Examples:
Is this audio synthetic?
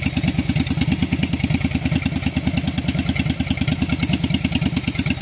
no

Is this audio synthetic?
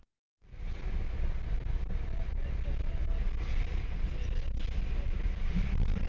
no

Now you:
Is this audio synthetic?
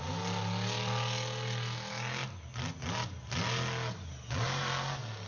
no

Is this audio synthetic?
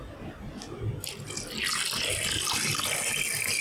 no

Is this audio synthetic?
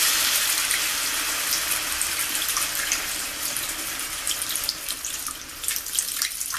yes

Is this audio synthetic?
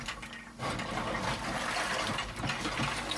no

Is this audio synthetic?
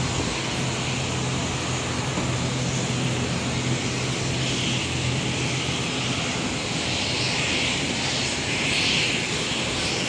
no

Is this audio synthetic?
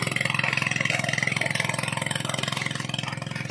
no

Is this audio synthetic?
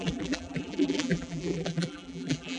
yes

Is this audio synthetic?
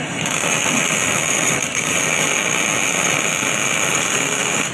no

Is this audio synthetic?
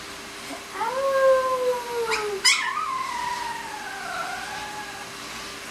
no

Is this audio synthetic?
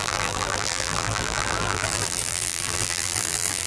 yes